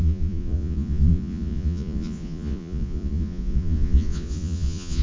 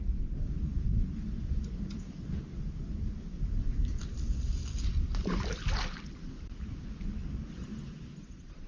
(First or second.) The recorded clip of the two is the second